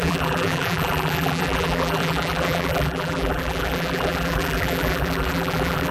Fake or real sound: fake